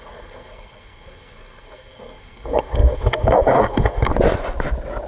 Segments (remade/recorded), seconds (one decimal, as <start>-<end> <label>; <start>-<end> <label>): 0.0-4.1 remade; 4.1-5.1 recorded